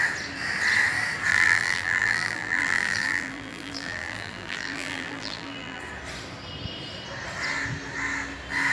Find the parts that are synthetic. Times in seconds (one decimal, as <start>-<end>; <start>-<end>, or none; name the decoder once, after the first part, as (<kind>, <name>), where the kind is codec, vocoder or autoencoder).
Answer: 1.3-5.8 (vocoder, BigVGAN v2)